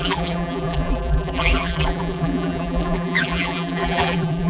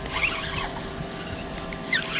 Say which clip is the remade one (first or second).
first